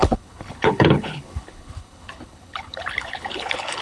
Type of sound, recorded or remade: remade